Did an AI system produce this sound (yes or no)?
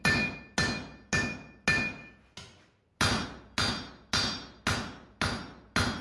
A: no